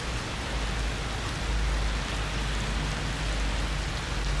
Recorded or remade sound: recorded